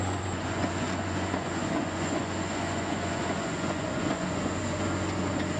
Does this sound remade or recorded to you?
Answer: remade